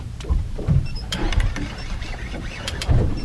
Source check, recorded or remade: remade